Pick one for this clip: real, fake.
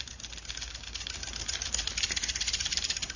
real